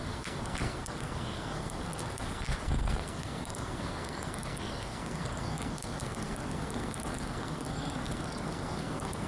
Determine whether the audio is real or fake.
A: fake